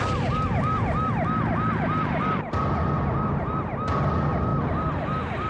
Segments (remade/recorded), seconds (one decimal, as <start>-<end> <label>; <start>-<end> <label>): 0.0-5.5 recorded